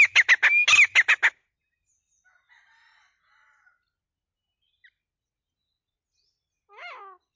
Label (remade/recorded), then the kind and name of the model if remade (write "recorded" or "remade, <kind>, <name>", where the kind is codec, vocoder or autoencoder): recorded